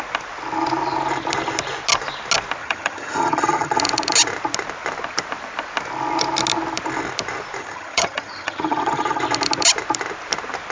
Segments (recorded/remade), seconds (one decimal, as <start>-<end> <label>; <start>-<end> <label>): 0.0-2.6 recorded; 2.6-3.8 remade; 3.8-7.6 recorded; 7.6-9.2 remade; 9.2-10.7 recorded